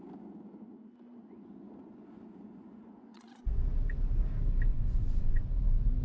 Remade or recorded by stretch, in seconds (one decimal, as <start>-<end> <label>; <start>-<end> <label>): 0.0-1.2 recorded; 1.2-3.6 remade; 3.6-4.7 recorded; 4.7-5.6 remade; 5.6-6.0 recorded